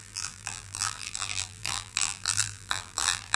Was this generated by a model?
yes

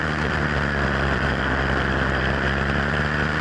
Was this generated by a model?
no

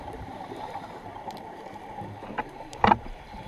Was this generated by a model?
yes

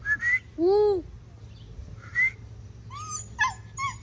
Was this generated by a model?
no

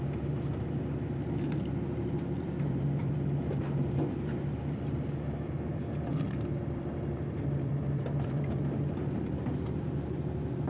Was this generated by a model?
yes